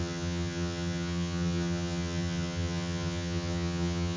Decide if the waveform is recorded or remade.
remade